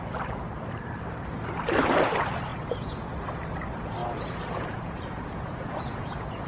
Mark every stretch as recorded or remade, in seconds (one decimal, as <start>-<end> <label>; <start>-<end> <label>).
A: 0.0-2.5 recorded; 2.5-3.1 remade; 3.1-4.0 recorded; 4.0-6.5 remade